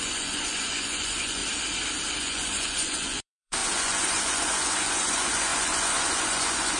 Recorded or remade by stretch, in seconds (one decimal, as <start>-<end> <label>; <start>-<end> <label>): 0.0-1.4 remade; 1.4-2.2 recorded; 2.2-6.8 remade

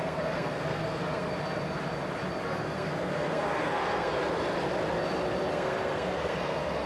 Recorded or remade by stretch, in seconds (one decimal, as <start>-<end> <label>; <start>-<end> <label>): 0.0-1.3 remade; 1.3-2.4 recorded; 2.4-4.2 remade; 4.2-5.5 recorded; 5.5-6.9 remade

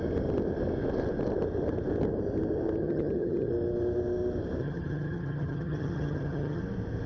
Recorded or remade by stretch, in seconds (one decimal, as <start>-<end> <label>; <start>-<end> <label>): 0.0-2.8 recorded; 2.8-3.5 remade; 3.5-4.6 recorded; 4.6-6.6 remade; 6.6-7.1 recorded

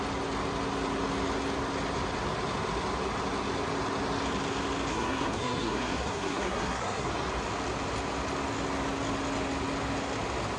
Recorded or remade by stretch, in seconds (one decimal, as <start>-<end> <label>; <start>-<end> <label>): 0.0-4.9 recorded; 4.9-7.1 remade; 7.1-10.6 recorded